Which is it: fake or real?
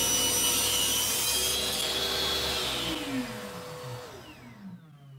real